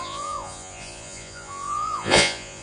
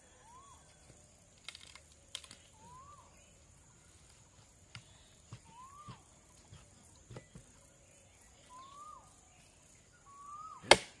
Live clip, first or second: second